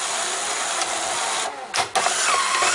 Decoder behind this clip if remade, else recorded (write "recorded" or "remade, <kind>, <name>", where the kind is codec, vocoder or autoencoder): recorded